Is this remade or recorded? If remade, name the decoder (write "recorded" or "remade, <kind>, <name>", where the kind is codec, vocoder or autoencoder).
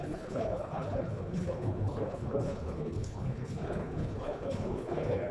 remade, codec, HILCodec